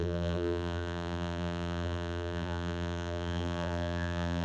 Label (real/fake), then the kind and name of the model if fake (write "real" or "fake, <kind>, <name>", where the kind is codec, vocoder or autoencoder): fake, vocoder, BigVGAN v2